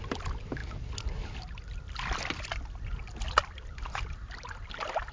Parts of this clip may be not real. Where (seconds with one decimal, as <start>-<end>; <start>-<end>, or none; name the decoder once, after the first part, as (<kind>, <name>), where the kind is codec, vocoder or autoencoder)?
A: none